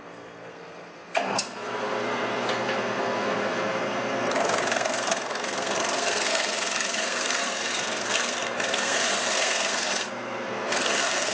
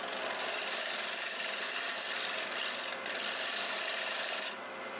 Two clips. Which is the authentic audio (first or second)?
second